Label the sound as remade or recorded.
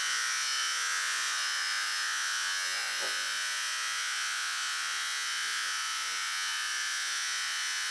remade